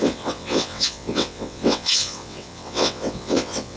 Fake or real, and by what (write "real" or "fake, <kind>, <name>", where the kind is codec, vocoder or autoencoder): fake, vocoder, WaveNeXt